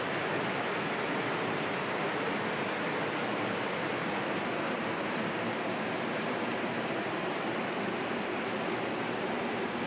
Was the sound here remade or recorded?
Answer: remade